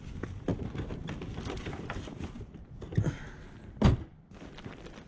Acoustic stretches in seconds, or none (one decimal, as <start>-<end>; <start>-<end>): 0.0-5.1